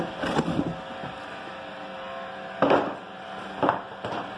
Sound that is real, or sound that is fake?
real